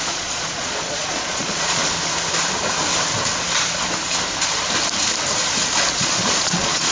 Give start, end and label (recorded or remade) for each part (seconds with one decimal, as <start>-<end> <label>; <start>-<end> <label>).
0.0-1.8 remade; 1.8-5.9 recorded; 5.9-6.9 remade